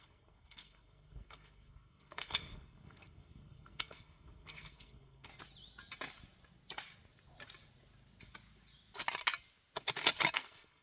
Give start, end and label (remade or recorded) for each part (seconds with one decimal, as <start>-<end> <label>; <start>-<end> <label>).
0.0-5.3 remade; 5.3-10.3 recorded; 10.3-10.8 remade